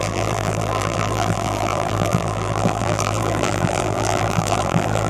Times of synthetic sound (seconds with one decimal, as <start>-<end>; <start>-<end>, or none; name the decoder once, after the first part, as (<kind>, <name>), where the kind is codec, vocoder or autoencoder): 0.0-5.1 (vocoder, BigVGAN v2)